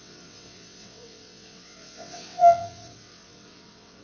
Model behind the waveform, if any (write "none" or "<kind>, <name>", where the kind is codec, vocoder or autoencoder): vocoder, WaveNeXt